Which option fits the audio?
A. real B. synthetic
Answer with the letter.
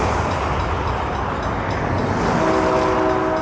A